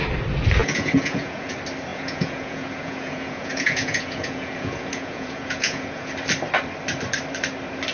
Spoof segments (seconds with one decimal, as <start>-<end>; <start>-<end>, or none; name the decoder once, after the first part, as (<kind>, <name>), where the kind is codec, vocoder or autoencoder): 0.6-1.5 (vocoder, Vocos); 1.9-6.1